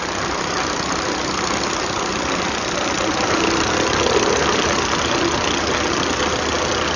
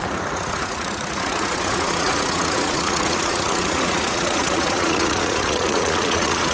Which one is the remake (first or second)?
second